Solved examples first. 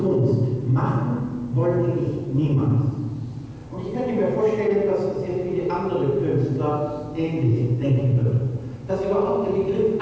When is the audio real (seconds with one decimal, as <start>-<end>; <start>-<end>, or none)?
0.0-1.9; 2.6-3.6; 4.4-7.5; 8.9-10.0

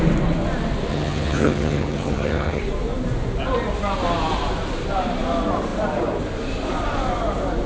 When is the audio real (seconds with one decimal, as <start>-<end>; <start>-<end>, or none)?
0.0-0.9; 2.6-7.7

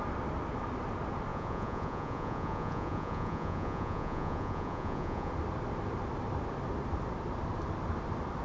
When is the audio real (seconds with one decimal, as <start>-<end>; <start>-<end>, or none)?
0.0-1.3; 5.3-8.4

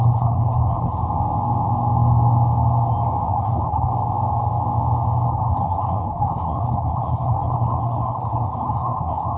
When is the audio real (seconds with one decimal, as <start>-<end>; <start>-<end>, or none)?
1.0-3.3; 3.9-5.3

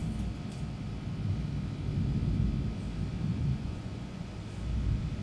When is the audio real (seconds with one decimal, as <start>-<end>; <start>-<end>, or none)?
0.0-3.3; 4.3-5.2

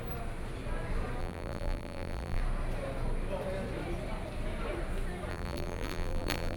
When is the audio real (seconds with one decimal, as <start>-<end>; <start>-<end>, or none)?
0.0-1.2; 2.4-5.3

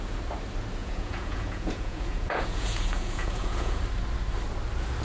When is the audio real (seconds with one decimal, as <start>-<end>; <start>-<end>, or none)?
0.0-0.8; 3.8-5.0

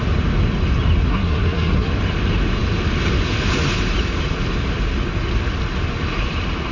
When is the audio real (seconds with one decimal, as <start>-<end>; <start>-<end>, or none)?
0.0-1.1; 1.9-6.7